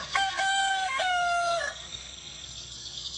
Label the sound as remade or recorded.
remade